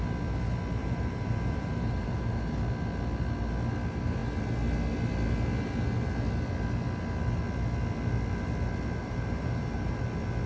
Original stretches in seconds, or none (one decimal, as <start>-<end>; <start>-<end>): 0.0-0.8; 2.4-9.0; 10.0-10.5